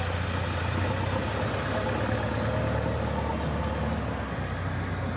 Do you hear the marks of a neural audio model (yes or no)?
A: no